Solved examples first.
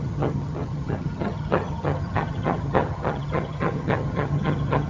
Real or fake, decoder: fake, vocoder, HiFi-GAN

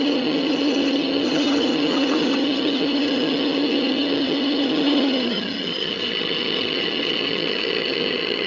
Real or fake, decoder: fake, vocoder, HiFi-GAN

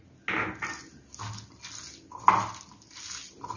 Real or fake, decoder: real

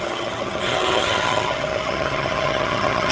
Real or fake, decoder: fake, vocoder, HiFi-GAN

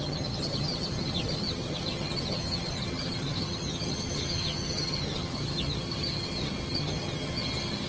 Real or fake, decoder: fake, vocoder, HiFi-GAN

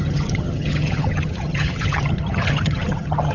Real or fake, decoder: fake, vocoder, HiFi-GAN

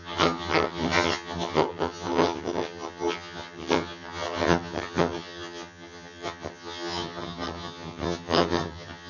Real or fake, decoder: fake, vocoder, HiFi-GAN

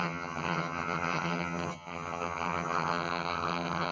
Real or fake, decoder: fake, vocoder, HiFi-GAN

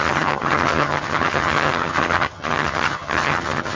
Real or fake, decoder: fake, vocoder, HiFi-GAN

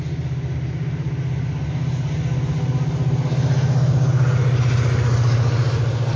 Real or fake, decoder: real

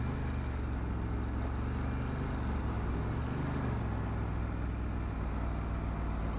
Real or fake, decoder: real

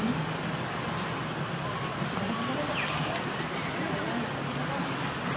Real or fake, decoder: real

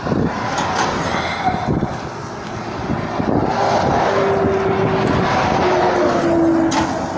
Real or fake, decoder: real